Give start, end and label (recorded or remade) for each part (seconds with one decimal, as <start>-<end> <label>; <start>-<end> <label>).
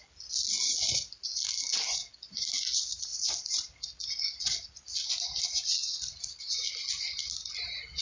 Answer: 0.0-8.0 recorded